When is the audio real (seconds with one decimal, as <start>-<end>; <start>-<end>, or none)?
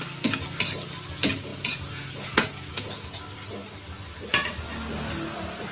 0.0-1.5; 3.2-5.7